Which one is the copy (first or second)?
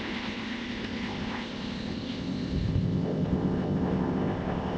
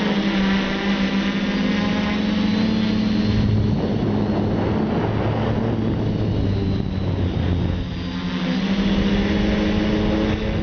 first